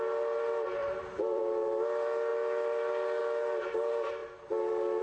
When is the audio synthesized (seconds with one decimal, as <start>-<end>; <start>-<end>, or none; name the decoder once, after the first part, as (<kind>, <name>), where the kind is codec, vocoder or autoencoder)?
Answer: 0.8-1.4 (vocoder, BigVGAN v2)